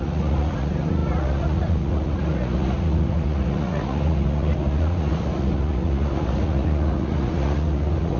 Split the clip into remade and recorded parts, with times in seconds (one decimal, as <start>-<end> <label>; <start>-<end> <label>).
0.0-8.2 remade